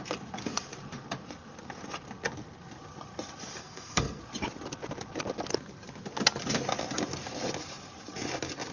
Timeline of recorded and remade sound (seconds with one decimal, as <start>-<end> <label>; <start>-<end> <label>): 0.0-3.6 recorded; 3.6-4.2 remade; 4.2-8.7 recorded